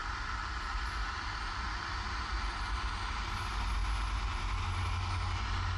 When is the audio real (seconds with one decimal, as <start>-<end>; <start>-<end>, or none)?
0.0-5.8